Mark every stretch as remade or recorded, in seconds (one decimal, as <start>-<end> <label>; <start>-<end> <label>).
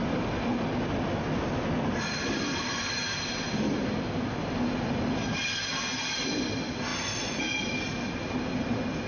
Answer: 0.0-9.1 recorded